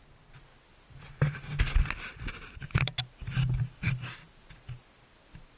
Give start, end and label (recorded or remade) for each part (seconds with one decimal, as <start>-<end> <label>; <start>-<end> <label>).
0.0-5.6 recorded